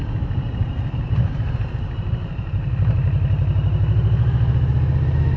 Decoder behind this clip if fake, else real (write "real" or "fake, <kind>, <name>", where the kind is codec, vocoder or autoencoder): real